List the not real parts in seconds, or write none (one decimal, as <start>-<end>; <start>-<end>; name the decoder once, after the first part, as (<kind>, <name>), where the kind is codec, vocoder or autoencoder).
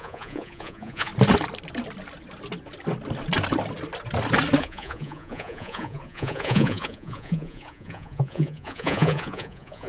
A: 0.0-1.1 (vocoder, Vocos); 4.6-9.9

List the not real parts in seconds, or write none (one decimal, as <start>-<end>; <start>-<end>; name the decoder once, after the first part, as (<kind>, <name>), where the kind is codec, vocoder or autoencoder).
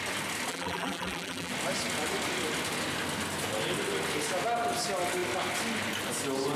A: 0.5-1.5 (vocoder, BigVGAN v2)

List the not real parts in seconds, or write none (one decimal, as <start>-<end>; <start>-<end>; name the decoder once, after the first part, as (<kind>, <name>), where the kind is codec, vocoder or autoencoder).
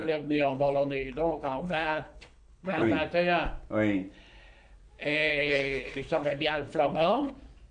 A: 0.0-2.9 (codec, HILCodec); 5.3-7.3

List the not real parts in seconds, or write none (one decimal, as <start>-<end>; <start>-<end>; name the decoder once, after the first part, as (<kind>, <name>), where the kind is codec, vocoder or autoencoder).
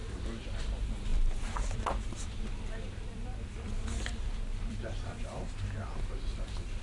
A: 1.1-5.2 (vocoder, BigVGAN v2)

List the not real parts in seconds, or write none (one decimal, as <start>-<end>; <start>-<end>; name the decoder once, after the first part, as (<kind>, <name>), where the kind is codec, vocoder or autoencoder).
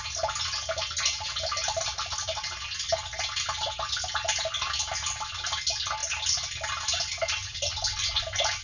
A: none